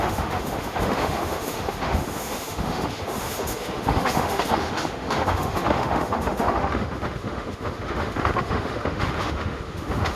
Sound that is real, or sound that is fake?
fake